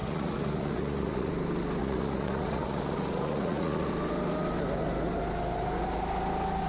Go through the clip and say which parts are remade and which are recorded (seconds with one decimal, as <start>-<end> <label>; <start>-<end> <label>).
0.0-1.3 remade; 1.3-1.8 recorded; 1.8-3.9 remade; 3.9-6.7 recorded